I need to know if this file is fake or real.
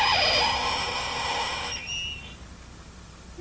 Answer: real